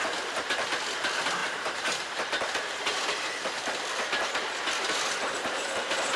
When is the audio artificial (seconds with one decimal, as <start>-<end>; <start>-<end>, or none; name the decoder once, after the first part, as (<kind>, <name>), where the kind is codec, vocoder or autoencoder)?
none